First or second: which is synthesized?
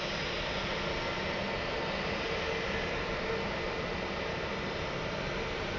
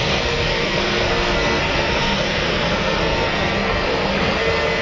second